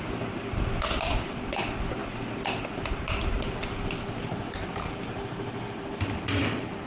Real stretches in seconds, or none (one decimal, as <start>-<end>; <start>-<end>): 0.0-6.9